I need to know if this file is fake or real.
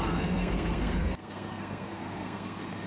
fake